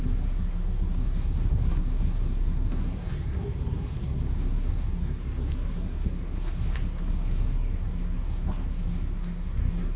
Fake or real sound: fake